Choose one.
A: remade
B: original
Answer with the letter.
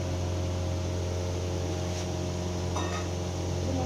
B